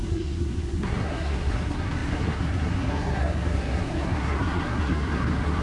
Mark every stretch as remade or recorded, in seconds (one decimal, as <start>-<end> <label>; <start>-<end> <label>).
0.0-5.6 remade